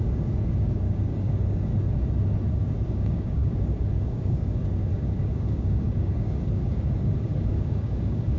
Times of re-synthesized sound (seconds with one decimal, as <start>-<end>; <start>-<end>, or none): 0.0-1.7; 2.5-8.4